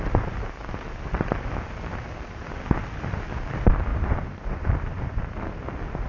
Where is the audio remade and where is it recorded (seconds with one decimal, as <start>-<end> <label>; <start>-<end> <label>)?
0.0-3.9 recorded; 3.9-5.4 remade; 5.4-6.1 recorded